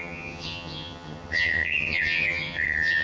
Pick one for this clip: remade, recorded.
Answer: remade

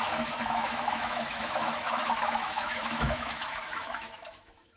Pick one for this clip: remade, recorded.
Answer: remade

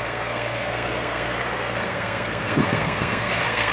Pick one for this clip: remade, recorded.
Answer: remade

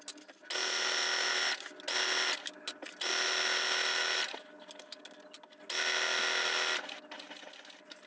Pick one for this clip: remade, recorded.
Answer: recorded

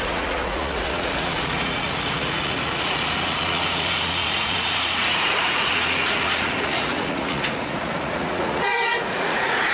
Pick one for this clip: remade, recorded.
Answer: remade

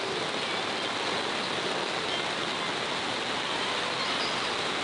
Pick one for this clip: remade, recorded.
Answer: recorded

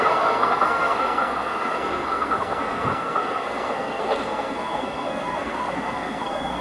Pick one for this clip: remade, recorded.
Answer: remade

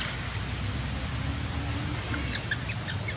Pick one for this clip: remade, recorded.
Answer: recorded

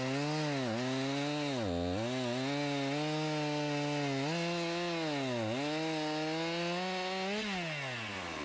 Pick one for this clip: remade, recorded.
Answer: recorded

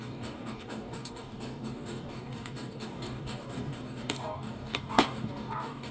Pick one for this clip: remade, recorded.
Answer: remade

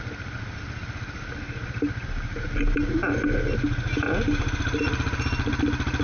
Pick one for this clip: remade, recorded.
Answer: recorded